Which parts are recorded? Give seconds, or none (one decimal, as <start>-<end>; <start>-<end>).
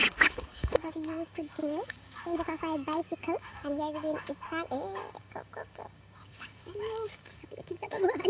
none